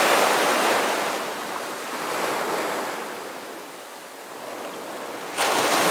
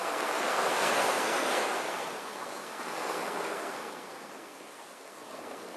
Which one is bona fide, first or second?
first